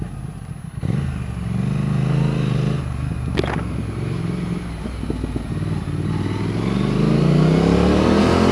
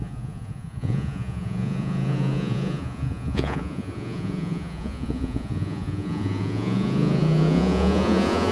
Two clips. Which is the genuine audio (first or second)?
first